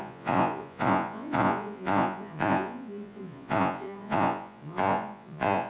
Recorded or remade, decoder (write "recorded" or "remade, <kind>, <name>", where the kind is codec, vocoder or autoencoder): remade, vocoder, Vocos